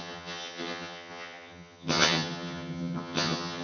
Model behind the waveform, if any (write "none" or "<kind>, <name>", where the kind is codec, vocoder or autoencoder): vocoder, HiFi-GAN